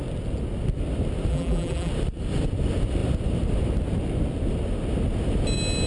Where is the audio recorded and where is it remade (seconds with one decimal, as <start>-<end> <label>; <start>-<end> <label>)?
0.0-1.3 recorded; 1.3-1.9 remade; 1.9-5.9 recorded